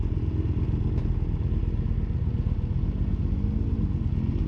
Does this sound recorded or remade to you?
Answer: recorded